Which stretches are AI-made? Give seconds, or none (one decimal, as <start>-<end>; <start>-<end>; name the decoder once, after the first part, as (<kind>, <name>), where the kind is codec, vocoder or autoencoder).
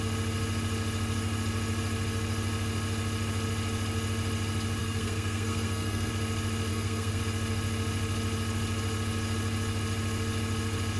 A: 4.8-6.1 (codec, SNAC); 6.7-7.2